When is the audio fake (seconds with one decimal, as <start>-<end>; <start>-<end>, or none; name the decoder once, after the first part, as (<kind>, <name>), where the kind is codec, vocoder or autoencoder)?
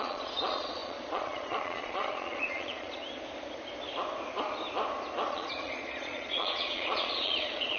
0.0-3.0 (vocoder, Vocos); 5.3-7.8